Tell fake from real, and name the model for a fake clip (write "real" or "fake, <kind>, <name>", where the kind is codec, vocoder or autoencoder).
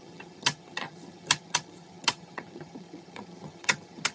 fake, vocoder, HiFi-GAN